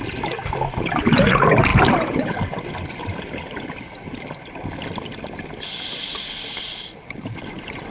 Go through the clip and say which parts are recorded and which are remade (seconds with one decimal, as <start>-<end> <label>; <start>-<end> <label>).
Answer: 0.0-7.9 recorded